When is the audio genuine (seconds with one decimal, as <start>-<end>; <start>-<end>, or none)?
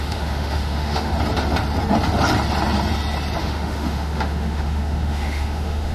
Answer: 1.1-3.4